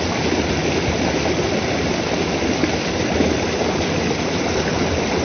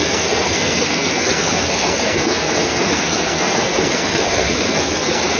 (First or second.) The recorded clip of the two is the first